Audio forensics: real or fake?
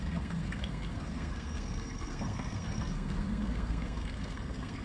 fake